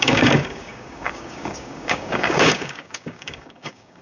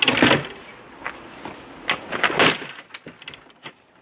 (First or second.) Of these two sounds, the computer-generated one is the first